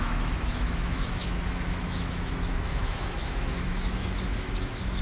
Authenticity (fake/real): fake